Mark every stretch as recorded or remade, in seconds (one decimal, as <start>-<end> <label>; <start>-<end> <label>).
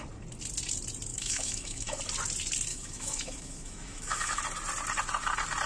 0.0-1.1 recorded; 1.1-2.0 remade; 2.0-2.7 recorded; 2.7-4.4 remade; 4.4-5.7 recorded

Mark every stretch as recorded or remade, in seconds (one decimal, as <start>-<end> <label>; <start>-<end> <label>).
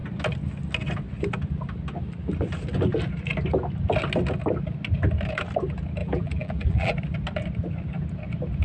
0.0-6.0 recorded; 6.0-6.9 remade; 6.9-8.6 recorded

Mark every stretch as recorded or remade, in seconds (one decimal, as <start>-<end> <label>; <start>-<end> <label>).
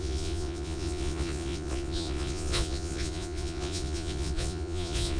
0.0-5.2 remade